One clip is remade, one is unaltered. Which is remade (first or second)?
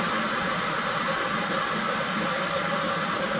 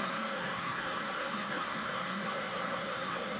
second